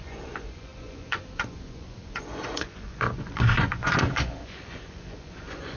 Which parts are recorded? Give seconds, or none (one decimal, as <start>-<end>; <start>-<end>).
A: none